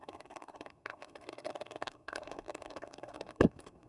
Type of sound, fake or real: fake